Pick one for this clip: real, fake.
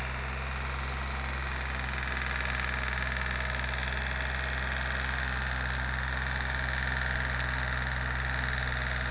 real